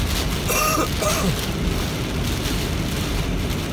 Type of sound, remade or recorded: recorded